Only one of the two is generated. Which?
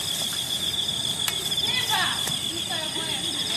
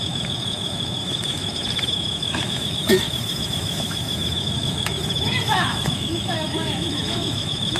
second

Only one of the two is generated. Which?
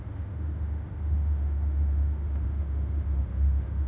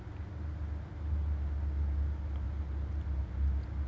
first